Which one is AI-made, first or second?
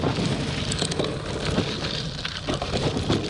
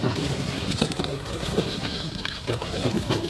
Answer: second